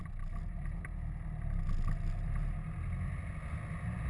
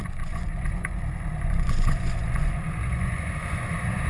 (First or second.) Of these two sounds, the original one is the first